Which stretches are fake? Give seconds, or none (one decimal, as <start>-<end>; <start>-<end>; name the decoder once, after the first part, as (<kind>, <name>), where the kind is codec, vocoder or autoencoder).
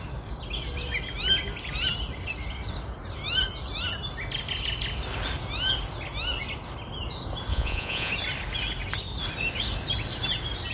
7.5-8.1 (vocoder, Vocos)